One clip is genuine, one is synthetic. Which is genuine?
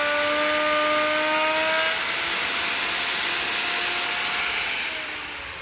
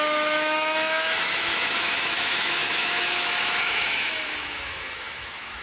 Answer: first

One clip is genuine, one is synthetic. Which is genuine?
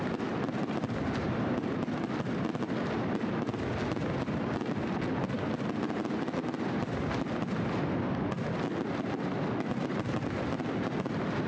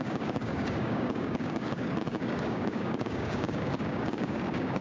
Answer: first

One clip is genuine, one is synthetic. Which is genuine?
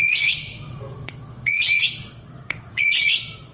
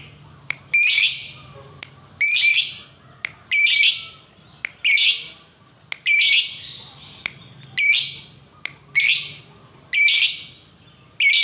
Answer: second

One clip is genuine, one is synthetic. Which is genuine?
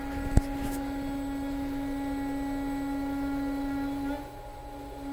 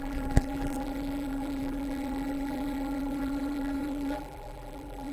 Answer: first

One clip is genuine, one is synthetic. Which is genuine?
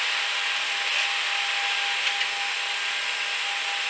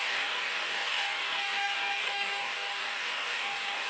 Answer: first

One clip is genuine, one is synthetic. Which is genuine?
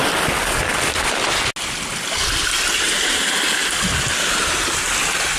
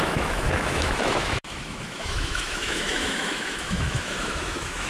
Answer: first